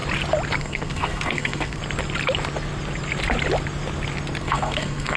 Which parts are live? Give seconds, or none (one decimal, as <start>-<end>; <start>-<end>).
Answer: 0.0-0.6; 1.8-4.4